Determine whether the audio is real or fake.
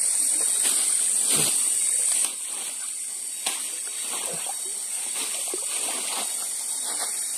real